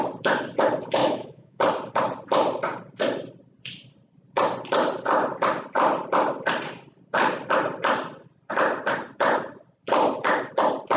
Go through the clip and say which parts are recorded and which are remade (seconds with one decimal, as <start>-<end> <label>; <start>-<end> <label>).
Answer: 0.0-1.0 recorded; 1.0-1.6 remade; 1.6-11.0 recorded